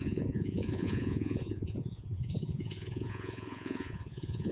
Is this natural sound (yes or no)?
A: no